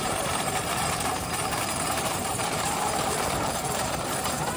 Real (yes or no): no